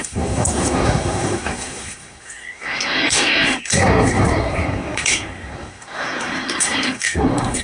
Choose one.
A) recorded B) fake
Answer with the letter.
B